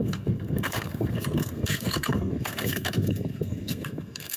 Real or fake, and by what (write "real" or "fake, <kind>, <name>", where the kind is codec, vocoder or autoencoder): fake, codec, SNAC